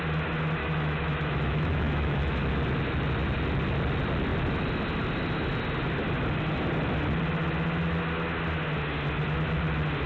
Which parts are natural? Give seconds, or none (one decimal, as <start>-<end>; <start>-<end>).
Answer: 0.0-0.6; 2.5-10.1